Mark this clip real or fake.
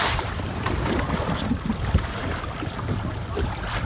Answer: fake